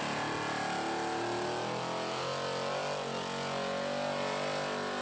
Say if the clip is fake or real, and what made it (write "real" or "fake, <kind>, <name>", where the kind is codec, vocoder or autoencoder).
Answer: real